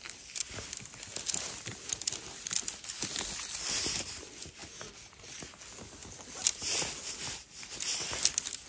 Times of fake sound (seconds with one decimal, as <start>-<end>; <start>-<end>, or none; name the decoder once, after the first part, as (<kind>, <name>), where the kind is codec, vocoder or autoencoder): none